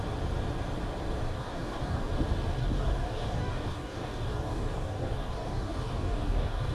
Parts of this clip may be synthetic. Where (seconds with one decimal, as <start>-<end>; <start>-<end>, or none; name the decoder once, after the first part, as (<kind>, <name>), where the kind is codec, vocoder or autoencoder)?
1.3-2.1 (codec, DAC); 2.6-6.7